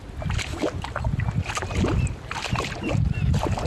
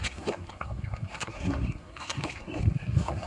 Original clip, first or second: first